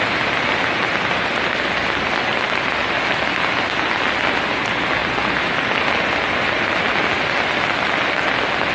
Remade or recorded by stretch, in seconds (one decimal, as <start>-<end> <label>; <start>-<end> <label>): 0.0-8.7 recorded